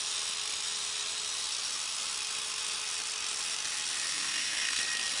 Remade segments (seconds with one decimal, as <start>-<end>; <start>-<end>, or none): 4.1-4.8